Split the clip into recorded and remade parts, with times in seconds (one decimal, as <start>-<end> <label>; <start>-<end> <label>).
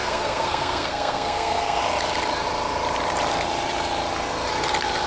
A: 0.0-1.8 remade; 1.8-5.1 recorded